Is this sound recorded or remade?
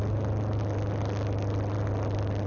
recorded